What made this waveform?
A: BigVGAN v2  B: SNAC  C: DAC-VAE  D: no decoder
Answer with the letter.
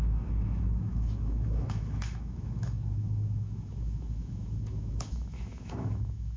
C